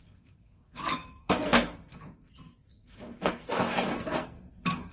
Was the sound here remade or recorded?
remade